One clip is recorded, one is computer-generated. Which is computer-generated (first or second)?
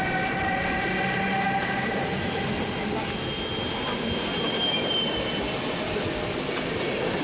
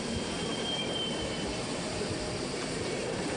second